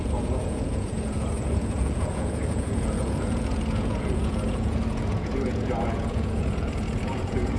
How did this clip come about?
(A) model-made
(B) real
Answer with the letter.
A